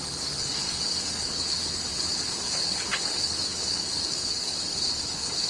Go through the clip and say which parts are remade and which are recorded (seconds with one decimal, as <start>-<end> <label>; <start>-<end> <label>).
0.0-5.5 remade